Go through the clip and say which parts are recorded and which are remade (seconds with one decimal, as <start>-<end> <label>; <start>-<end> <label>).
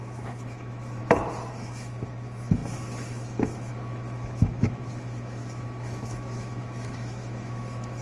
0.0-1.0 remade; 1.0-1.5 recorded; 1.5-8.0 remade